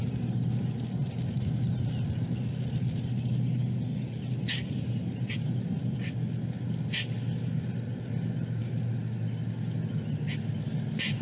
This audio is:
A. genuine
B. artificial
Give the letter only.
A